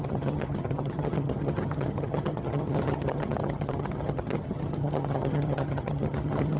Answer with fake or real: fake